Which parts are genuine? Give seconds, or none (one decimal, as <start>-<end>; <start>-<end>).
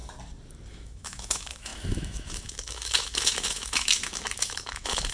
0.0-0.7